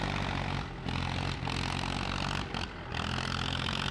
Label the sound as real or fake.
real